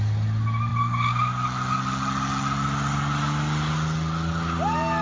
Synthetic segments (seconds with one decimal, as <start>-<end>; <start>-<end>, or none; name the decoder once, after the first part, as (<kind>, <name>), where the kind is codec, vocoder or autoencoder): none